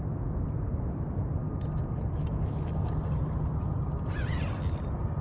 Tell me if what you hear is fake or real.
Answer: real